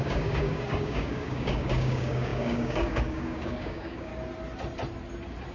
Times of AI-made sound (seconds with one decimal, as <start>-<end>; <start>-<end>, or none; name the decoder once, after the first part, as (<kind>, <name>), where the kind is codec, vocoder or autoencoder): 0.0-4.1 (codec, DAC)